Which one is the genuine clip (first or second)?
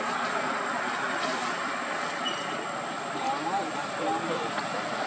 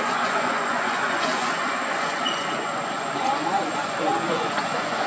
first